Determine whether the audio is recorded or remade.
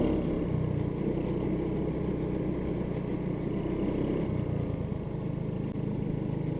recorded